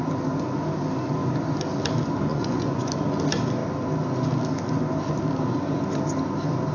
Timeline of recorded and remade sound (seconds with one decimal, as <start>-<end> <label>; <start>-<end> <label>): 0.0-2.3 recorded; 2.3-2.9 remade; 2.9-6.7 recorded